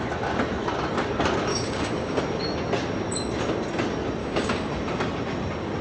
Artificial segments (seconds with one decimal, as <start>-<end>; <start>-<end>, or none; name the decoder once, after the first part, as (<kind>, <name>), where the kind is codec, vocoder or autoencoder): 1.5-2.2 (codec, DAC); 4.2-4.7